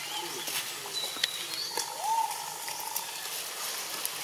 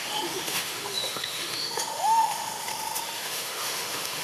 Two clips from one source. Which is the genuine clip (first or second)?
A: first